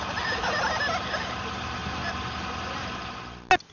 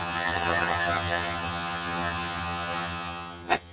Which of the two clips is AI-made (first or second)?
second